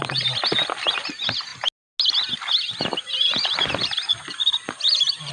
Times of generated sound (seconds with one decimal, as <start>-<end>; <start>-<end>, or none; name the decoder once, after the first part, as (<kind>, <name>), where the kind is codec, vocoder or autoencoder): none